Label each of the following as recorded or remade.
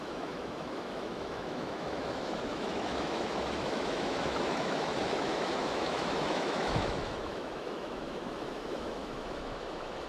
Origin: remade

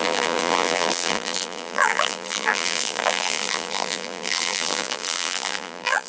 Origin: remade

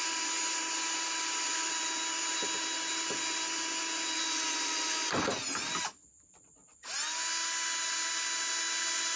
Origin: recorded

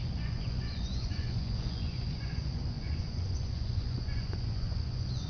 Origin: remade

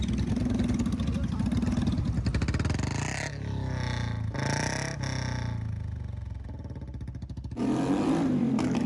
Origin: recorded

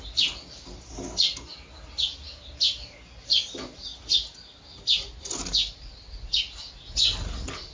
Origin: recorded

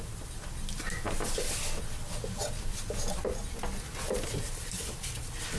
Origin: recorded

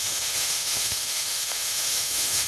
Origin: remade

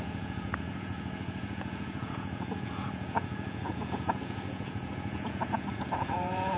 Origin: remade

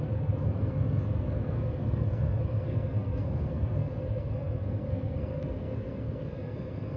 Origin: remade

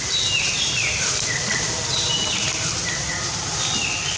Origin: recorded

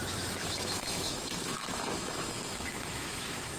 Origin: remade